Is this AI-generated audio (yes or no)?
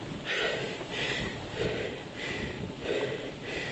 no